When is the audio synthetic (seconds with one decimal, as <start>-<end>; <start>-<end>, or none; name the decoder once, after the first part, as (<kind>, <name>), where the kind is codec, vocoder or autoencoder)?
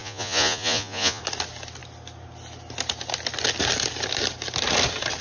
0.0-1.2 (vocoder, Vocos)